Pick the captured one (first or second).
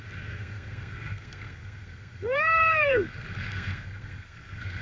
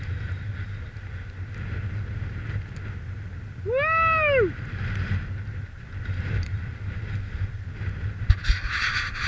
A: second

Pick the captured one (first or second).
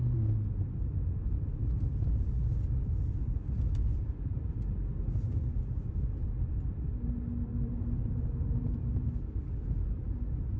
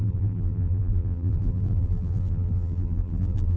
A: first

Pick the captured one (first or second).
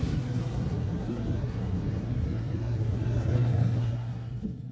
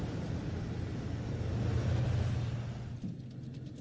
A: second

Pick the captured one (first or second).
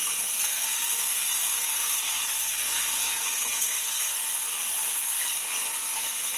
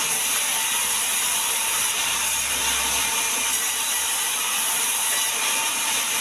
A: second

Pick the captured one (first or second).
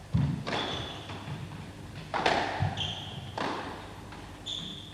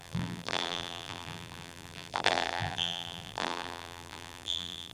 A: first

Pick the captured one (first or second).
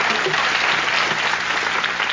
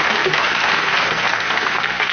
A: first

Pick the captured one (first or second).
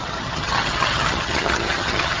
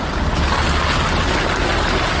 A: second